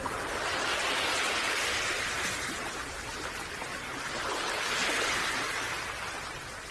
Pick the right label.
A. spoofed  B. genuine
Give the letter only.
B